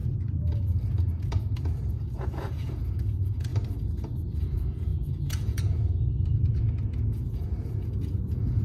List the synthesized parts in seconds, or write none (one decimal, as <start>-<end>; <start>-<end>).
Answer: 1.3-3.5; 4.3-8.6